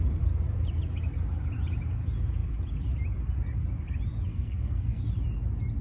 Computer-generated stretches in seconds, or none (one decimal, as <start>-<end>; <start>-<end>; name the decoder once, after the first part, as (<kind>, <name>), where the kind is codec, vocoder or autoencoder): 4.3-5.0 (codec, SNAC)